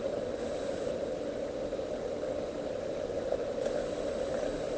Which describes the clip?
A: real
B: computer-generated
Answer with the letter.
A